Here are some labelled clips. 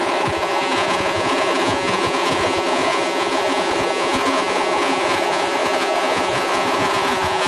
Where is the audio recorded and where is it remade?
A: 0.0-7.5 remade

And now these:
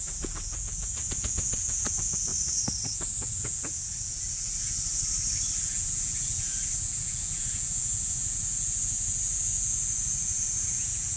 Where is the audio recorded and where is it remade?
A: 0.0-2.3 remade; 2.3-2.9 recorded; 2.9-5.0 remade; 5.0-5.6 recorded; 5.6-11.2 remade

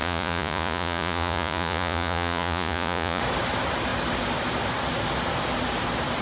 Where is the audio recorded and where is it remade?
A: 0.0-3.2 remade; 3.2-6.2 recorded

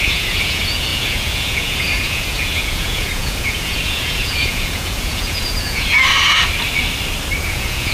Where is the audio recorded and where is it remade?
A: 0.0-6.0 remade; 6.0-7.4 recorded; 7.4-7.9 remade

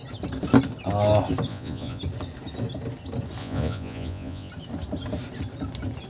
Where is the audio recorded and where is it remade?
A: 0.0-1.5 recorded; 1.5-2.0 remade; 2.0-3.4 recorded; 3.4-4.5 remade; 4.5-6.1 recorded